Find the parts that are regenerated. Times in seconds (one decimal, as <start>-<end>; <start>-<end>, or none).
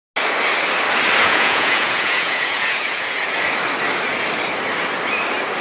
1.2-3.2